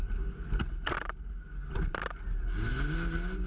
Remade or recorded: recorded